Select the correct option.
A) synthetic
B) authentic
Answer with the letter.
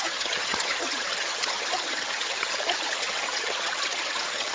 A